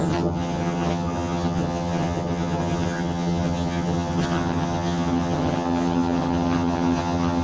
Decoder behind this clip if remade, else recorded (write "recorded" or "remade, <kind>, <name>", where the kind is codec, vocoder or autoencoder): remade, vocoder, HiFi-GAN